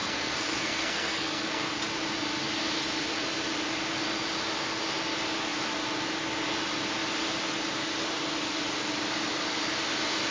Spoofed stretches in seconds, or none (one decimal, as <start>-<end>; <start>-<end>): 0.0-1.8